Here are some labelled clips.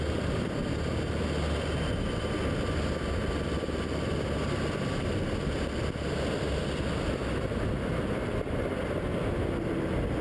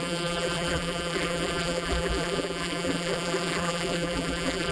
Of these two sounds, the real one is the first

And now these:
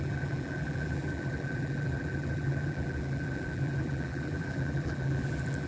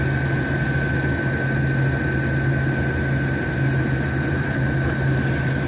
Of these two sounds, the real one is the second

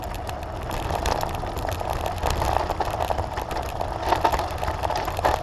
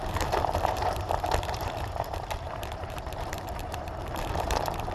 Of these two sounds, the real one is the first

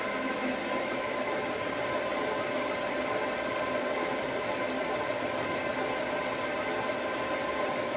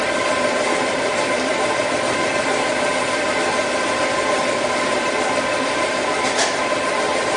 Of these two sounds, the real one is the first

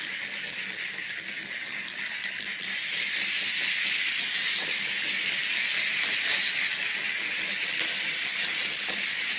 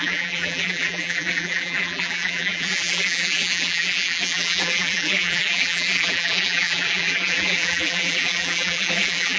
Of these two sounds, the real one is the first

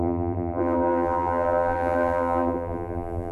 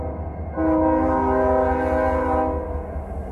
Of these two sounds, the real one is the second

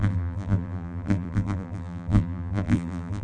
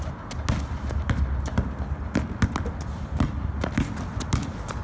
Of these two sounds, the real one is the second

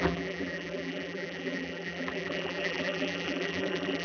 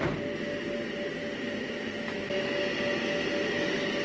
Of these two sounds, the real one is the second